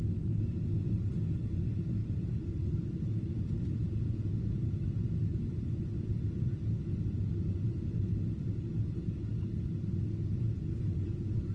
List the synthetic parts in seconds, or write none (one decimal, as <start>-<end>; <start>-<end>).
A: 2.0-3.0; 5.3-6.6